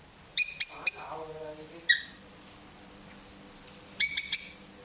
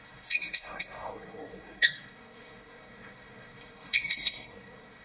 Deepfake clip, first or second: second